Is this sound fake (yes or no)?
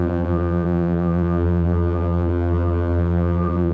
yes